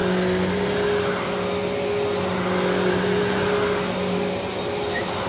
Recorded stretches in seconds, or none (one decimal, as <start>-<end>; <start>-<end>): 0.0-5.3

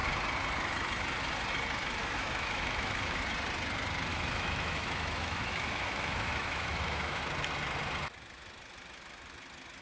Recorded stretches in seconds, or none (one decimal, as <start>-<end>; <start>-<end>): 0.0-2.0; 3.2-4.1; 7.2-9.8

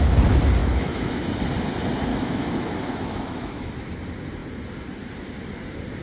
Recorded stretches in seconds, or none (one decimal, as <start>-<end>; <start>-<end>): 0.0-0.6; 1.2-2.1; 3.7-6.0

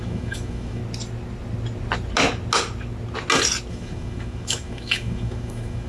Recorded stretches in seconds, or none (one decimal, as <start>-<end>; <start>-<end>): 0.8-3.7

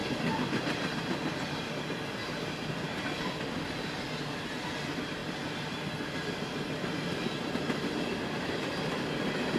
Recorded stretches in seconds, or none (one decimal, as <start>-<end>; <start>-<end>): 0.0-9.6

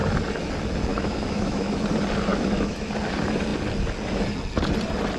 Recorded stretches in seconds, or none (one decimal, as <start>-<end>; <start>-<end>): 0.0-0.9; 1.8-2.3; 2.9-5.2

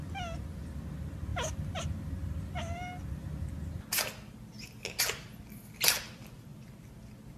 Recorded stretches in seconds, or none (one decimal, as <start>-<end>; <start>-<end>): 0.0-7.4